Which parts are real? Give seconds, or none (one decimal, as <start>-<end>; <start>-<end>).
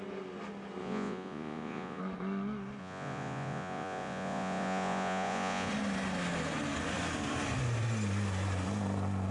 0.0-0.8; 2.0-2.8; 5.7-9.3